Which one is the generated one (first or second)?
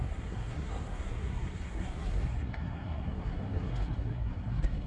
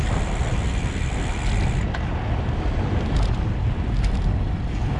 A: first